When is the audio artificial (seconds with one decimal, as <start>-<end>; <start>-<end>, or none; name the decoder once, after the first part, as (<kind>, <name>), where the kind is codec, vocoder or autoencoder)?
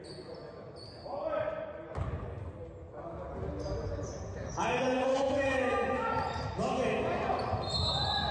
5.1-6.1 (autoencoder, DAC-VAE)